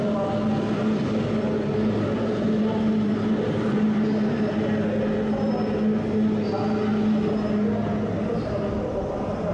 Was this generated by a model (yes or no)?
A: no